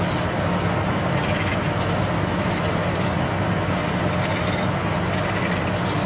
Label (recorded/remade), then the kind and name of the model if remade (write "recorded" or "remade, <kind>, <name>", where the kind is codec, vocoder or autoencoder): recorded